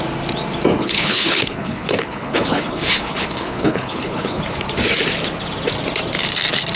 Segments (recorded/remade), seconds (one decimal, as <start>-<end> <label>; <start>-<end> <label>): 0.0-0.8 recorded; 0.8-4.4 remade; 4.4-6.8 recorded

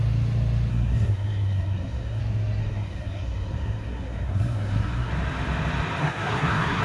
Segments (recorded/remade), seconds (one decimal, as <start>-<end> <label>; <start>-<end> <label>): 0.0-0.7 recorded; 0.7-2.2 remade; 2.2-2.6 recorded; 2.6-5.1 remade; 5.1-6.0 recorded; 6.0-6.8 remade

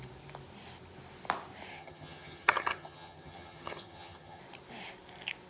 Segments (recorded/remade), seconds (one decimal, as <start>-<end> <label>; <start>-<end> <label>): 0.0-1.7 recorded; 1.7-4.4 remade; 4.4-5.5 recorded

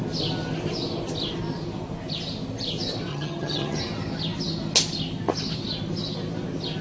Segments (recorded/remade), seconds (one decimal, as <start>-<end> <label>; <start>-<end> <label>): 0.0-3.1 recorded; 3.1-3.8 remade; 3.8-6.8 recorded

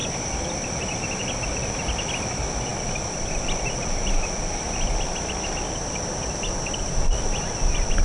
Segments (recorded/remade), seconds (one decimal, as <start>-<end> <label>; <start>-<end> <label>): 0.0-8.0 recorded

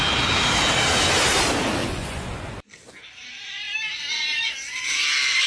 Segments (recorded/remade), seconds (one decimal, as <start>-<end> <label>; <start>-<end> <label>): 0.0-1.8 recorded; 1.8-2.5 remade; 2.5-4.1 recorded; 4.1-4.9 remade; 4.9-5.5 recorded

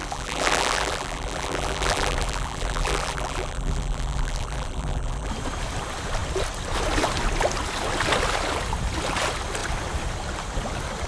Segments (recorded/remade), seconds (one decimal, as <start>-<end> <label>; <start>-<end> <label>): 0.0-5.3 remade; 5.3-11.1 recorded